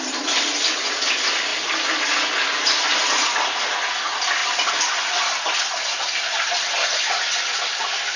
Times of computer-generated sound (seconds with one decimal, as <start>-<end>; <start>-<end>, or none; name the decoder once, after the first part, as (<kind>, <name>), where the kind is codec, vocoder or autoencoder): none